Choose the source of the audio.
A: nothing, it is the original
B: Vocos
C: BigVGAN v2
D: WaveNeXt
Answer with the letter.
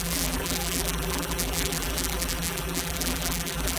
C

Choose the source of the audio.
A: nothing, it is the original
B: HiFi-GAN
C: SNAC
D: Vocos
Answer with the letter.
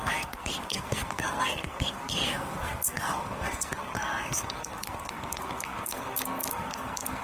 C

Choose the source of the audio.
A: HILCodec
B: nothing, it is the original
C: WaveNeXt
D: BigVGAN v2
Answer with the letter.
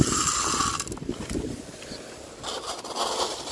B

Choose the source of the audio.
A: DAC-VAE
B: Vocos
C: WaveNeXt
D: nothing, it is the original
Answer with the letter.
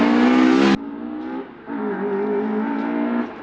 D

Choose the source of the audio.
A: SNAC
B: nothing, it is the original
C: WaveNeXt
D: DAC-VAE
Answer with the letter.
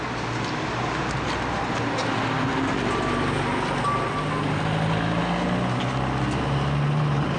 B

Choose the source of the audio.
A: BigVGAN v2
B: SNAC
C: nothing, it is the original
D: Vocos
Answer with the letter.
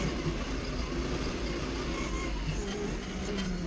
C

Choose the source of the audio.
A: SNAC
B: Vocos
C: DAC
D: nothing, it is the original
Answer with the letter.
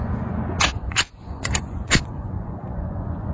B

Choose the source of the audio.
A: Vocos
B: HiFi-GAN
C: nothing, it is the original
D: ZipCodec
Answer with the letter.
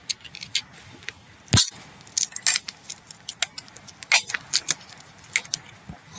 C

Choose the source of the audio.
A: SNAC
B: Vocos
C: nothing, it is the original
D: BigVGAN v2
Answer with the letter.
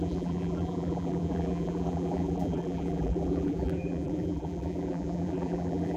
D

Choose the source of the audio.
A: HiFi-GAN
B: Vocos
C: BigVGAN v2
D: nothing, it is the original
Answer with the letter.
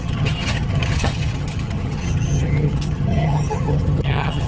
A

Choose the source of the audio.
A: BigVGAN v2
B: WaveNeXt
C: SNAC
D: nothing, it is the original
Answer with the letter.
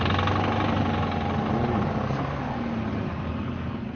D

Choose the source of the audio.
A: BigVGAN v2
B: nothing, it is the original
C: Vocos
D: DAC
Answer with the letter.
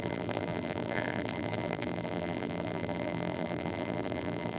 A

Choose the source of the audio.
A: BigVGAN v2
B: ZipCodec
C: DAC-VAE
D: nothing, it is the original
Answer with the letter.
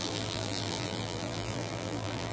A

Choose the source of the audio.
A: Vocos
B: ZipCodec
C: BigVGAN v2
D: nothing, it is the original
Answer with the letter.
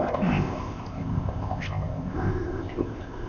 B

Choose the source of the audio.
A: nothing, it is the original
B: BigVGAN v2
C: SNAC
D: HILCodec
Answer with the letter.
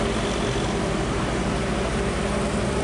A